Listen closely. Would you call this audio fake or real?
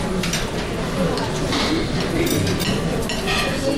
real